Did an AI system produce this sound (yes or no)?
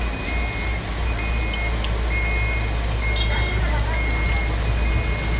no